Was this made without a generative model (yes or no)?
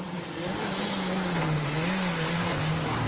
yes